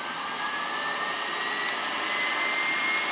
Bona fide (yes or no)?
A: yes